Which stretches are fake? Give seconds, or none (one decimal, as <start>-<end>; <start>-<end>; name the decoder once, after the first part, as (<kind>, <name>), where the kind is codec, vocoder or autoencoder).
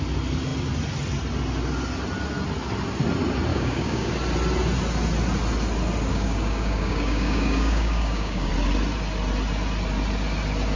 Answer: 3.5-4.1 (codec, DAC); 6.1-8.5